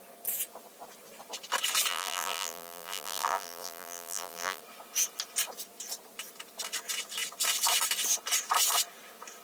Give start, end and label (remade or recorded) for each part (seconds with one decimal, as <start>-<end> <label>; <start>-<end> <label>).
0.0-1.9 recorded; 1.9-4.6 remade; 4.6-9.4 recorded